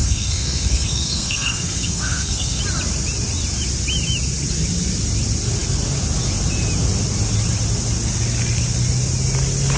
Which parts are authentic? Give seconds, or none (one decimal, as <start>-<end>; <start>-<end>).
2.6-9.8